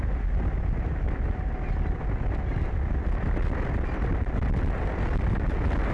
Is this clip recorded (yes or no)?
yes